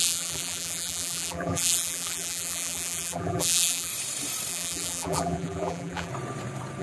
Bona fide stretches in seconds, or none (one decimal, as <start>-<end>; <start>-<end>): 3.9-4.5; 6.1-6.8